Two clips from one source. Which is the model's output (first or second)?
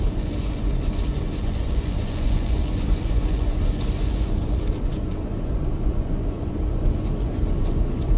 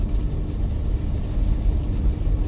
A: first